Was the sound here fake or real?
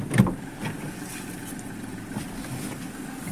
real